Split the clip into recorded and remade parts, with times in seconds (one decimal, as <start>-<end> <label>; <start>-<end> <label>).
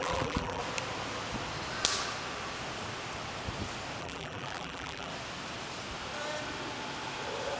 0.0-0.6 remade; 0.6-4.0 recorded; 4.0-5.1 remade; 5.1-7.6 recorded